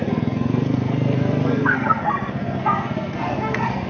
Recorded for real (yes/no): no